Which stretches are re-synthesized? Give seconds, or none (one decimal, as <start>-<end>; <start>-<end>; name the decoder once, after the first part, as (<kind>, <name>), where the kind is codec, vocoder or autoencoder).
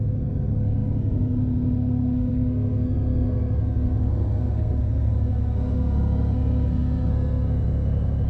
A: 0.0-8.3 (codec, SNAC)